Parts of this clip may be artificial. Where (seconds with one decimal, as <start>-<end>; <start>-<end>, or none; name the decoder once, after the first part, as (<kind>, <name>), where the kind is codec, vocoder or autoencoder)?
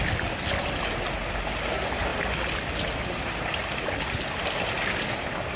none